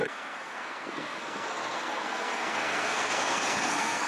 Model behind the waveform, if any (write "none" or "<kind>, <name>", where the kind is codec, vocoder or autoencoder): codec, SNAC